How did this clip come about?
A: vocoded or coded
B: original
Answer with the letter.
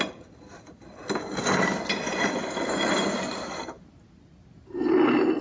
B